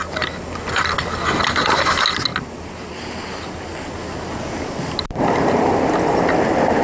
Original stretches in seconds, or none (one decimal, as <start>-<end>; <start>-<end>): 0.0-6.8